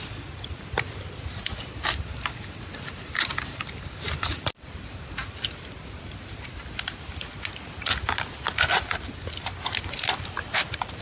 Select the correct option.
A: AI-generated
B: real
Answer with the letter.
B